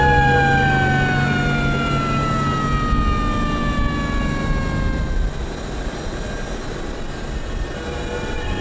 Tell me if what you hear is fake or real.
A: real